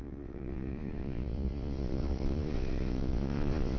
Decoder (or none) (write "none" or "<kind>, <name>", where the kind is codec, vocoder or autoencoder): vocoder, Vocos